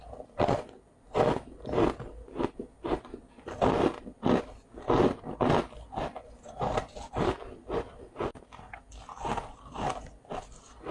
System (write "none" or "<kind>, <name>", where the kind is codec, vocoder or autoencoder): none